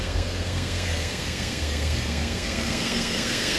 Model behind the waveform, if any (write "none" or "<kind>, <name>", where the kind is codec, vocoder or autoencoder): codec, SNAC